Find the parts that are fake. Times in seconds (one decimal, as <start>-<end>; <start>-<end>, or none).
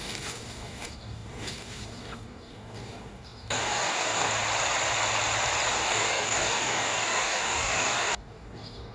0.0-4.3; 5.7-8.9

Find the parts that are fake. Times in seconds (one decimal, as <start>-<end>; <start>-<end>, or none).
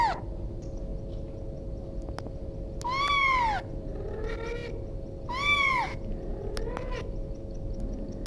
none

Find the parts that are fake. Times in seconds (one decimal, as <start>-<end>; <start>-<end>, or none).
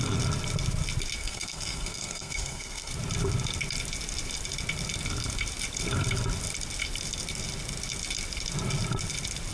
1.2-2.9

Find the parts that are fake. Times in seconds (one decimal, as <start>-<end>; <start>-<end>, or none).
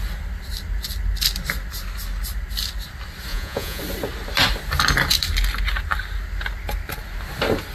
3.3-3.8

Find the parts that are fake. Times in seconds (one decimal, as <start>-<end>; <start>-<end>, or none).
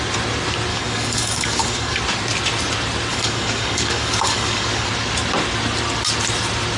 0.7-2.0; 3.1-4.9